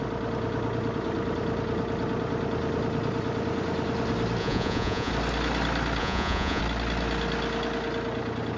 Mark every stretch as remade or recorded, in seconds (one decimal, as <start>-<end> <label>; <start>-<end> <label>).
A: 0.0-4.4 recorded; 4.4-5.1 remade; 5.1-6.0 recorded; 6.0-6.6 remade; 6.6-8.6 recorded

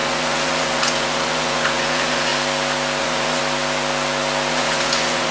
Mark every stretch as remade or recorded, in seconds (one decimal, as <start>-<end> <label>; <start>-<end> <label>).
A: 0.0-2.3 remade; 2.3-3.0 recorded; 3.0-3.4 remade; 3.4-4.5 recorded; 4.5-5.3 remade

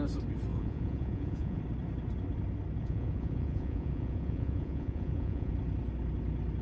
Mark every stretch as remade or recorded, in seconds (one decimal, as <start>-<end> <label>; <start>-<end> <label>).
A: 0.0-0.5 recorded; 0.5-1.6 remade; 1.6-2.8 recorded; 2.8-5.5 remade; 5.5-6.6 recorded